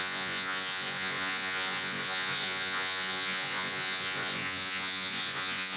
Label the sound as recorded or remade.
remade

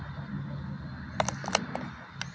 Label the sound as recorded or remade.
recorded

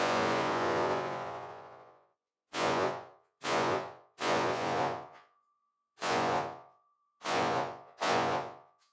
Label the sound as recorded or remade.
remade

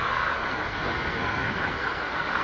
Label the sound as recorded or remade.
remade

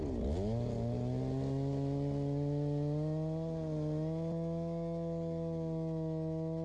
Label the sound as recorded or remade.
recorded